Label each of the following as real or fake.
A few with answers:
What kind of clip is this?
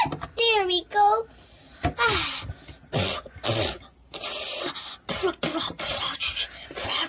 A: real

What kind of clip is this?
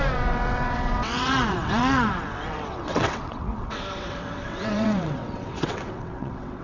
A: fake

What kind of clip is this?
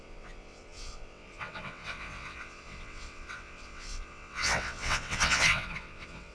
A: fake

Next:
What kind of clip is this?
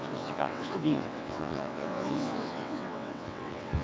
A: fake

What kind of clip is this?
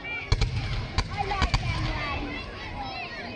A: real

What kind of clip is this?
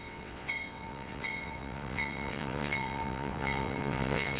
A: fake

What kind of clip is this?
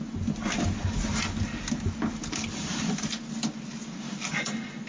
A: real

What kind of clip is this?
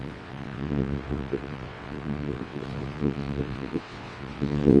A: fake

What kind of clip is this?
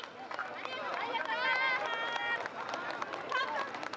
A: real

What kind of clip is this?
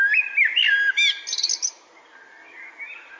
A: real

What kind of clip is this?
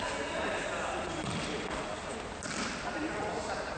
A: real